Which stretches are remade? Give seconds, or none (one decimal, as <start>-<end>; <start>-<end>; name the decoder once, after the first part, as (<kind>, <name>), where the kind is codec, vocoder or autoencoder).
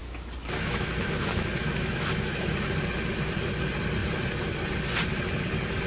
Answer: 0.0-2.4 (autoencoder, DAC-VAE)